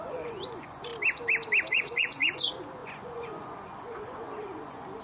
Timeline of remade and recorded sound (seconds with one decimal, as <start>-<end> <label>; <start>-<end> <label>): 0.0-0.9 remade; 0.9-1.7 recorded; 1.7-5.0 remade